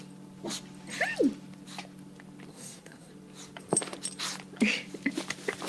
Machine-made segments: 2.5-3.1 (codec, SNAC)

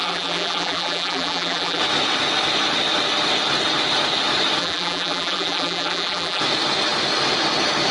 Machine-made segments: 0.0-1.8 (vocoder, BigVGAN v2); 4.6-6.4

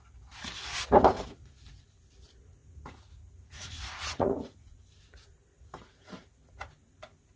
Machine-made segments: 2.6-4.8 (vocoder, Vocos)

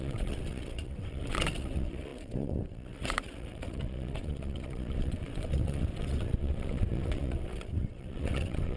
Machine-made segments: 0.0-8.8 (vocoder, WaveNeXt)

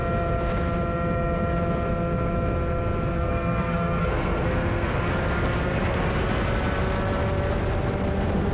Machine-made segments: 3.1-5.0 (codec, SNAC)

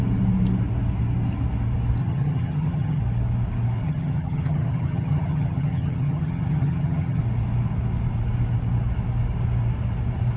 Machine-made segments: 2.0-3.0 (vocoder, HiFi-GAN); 3.8-7.2

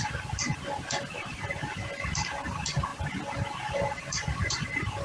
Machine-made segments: none

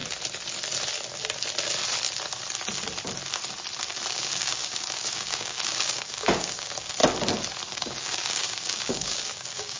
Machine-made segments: 4.1-7.0 (codec, DAC); 7.7-9.8